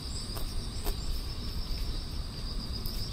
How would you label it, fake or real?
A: fake